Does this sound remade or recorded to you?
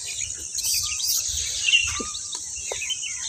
recorded